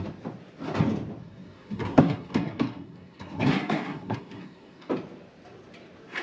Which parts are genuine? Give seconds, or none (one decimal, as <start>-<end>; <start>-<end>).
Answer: 0.0-1.2; 4.9-6.2